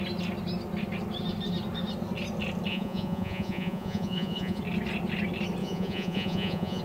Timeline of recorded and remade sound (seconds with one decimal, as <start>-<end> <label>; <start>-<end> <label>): 0.0-2.7 recorded; 2.7-4.6 remade; 4.6-5.6 recorded; 5.6-6.8 remade